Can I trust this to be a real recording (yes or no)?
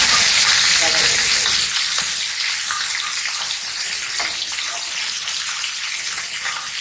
yes